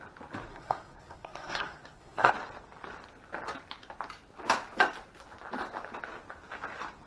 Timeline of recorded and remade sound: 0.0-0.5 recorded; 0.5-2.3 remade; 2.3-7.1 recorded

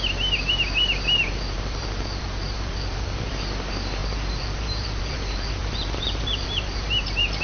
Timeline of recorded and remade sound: 0.0-1.2 recorded; 1.2-3.3 remade; 3.3-4.0 recorded; 4.0-7.4 remade

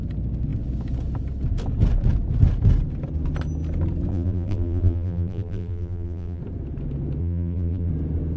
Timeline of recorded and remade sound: 0.0-4.1 recorded; 4.1-6.4 remade; 6.4-7.2 recorded; 7.2-7.9 remade; 7.9-8.4 recorded

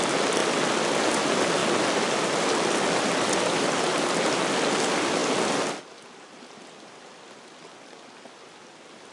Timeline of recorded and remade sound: 0.0-9.1 recorded

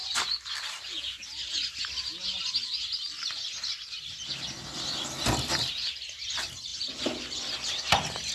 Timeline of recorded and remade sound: 0.0-8.3 recorded

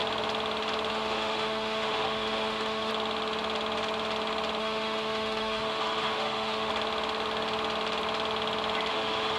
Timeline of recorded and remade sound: 0.0-0.9 recorded; 0.9-2.9 remade; 2.9-4.6 recorded; 4.6-6.7 remade; 6.7-8.9 recorded; 8.9-9.4 remade